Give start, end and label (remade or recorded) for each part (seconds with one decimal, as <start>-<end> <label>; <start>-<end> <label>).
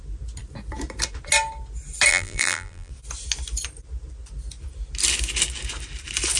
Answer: 0.0-2.1 recorded; 2.1-2.9 remade; 2.9-6.4 recorded